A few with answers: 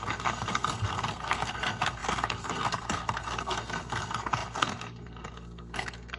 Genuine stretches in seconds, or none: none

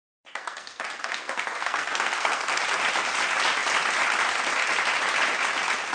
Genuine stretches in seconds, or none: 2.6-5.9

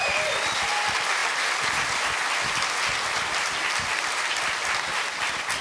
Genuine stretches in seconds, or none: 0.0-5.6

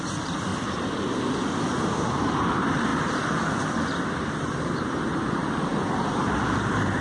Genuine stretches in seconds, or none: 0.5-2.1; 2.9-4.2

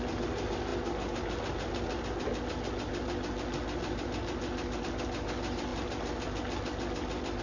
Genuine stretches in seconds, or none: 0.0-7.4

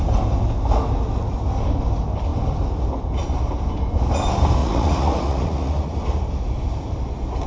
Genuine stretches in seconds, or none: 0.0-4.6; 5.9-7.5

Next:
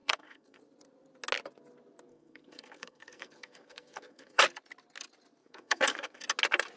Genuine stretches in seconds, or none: 0.6-2.1; 4.4-5.4; 6.2-6.8

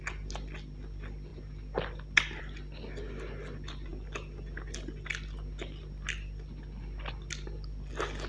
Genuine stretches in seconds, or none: 0.0-8.3